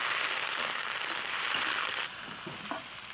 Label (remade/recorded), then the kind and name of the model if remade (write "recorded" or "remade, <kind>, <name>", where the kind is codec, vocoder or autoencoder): recorded